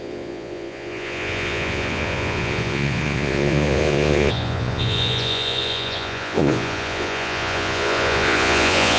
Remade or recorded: remade